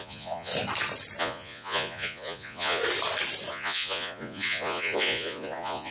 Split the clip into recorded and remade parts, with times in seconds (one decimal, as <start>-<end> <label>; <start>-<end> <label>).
0.0-0.5 remade; 0.5-1.2 recorded; 1.2-2.8 remade; 2.8-3.5 recorded; 3.5-5.9 remade